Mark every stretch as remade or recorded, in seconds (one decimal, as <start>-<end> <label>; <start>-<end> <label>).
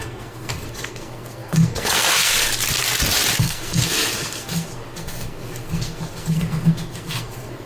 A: 0.0-2.5 remade; 2.5-3.4 recorded; 3.4-7.7 remade